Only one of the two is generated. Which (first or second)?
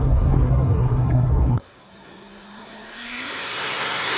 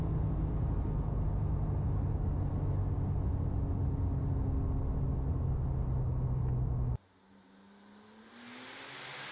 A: first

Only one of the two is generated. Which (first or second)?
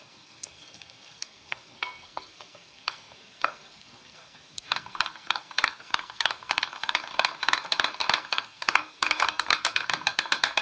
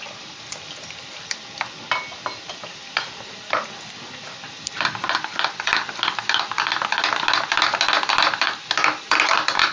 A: first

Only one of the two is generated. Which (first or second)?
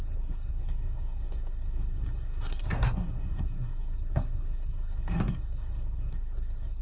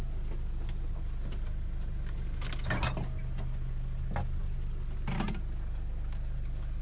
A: first